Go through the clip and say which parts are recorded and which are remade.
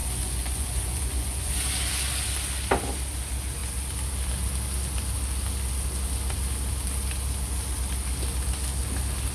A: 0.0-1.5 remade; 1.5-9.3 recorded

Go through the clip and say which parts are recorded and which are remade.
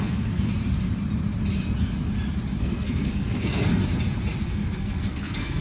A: 0.0-0.5 remade; 0.5-2.6 recorded; 2.6-3.8 remade; 3.8-4.4 recorded; 4.4-5.6 remade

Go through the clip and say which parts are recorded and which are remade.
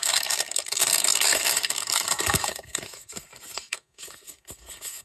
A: 0.0-5.0 remade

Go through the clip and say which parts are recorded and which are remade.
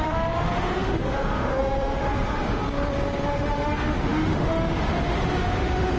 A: 0.0-2.6 remade; 2.6-3.3 recorded; 3.3-6.0 remade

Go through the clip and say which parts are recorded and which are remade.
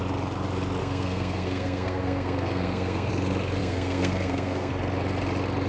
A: 0.0-0.8 recorded; 0.8-3.1 remade; 3.1-3.6 recorded; 3.6-4.7 remade; 4.7-5.7 recorded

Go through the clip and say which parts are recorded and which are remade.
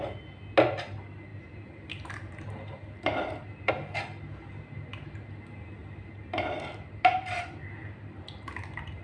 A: 0.0-1.3 recorded; 1.3-3.7 remade; 3.7-5.8 recorded; 5.8-8.2 remade; 8.2-9.0 recorded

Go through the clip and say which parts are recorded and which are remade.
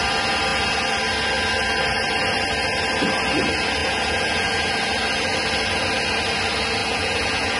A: 0.0-3.8 recorded; 3.8-4.7 remade; 4.7-6.8 recorded; 6.8-7.6 remade